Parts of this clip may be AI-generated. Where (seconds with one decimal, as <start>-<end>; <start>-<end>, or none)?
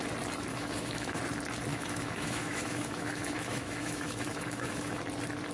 0.5-1.2; 1.7-5.0